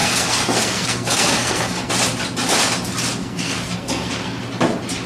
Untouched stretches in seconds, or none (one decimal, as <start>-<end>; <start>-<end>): 1.9-3.2; 4.4-5.1